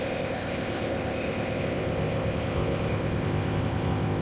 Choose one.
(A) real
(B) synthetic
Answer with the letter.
B